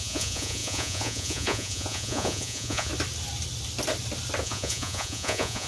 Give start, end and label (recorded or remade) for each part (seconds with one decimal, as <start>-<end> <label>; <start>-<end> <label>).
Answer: 0.0-2.9 remade; 2.9-4.4 recorded; 4.4-5.7 remade